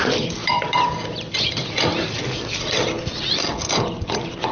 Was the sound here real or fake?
fake